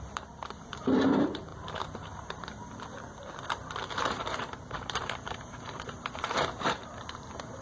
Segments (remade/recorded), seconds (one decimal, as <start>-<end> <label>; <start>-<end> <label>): 0.0-7.6 remade